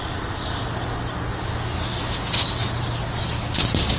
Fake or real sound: real